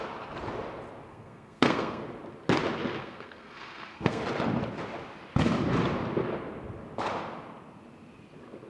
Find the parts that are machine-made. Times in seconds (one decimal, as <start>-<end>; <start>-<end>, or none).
1.1-2.0; 3.0-4.2